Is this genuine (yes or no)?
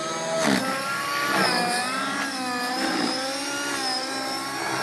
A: yes